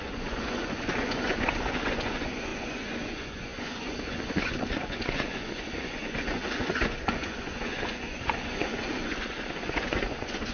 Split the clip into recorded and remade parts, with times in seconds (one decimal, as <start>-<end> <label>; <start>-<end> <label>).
0.0-10.5 remade